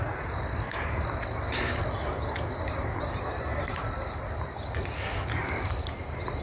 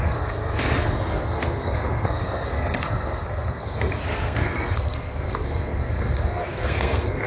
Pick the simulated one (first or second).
second